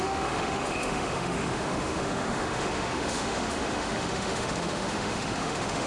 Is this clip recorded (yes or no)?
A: no